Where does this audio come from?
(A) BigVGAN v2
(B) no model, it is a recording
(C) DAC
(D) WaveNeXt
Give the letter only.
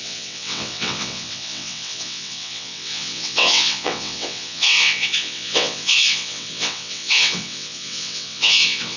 D